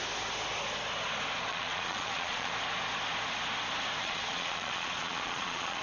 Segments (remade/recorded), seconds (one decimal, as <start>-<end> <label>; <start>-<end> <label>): 0.0-1.5 recorded; 1.5-2.5 remade; 2.5-4.0 recorded; 4.0-5.8 remade

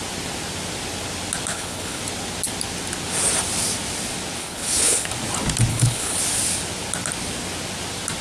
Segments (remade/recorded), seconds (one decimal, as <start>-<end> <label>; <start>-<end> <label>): 0.0-1.5 recorded; 1.5-2.0 remade; 2.0-4.4 recorded; 4.4-5.1 remade; 5.1-5.7 recorded; 5.7-6.2 remade; 6.2-8.2 recorded

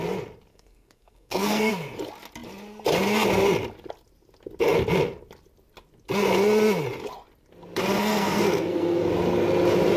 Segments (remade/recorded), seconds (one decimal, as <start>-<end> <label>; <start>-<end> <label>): 0.0-0.5 recorded; 0.5-1.7 remade; 1.7-8.0 recorded; 8.0-9.1 remade; 9.1-10.0 recorded